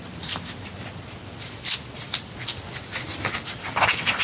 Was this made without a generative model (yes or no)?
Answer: yes